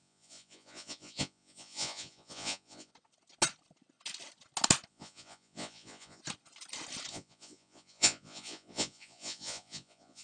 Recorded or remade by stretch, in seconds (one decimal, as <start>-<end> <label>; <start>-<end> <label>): 0.0-2.9 remade; 2.9-4.9 recorded; 4.9-6.2 remade; 6.2-7.1 recorded; 7.1-10.2 remade